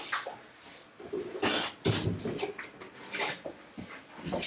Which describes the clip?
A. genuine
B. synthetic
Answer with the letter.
A